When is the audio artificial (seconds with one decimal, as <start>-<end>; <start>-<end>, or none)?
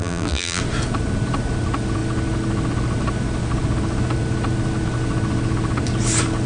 0.0-0.6